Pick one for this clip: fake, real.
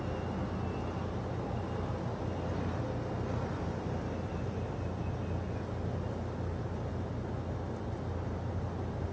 real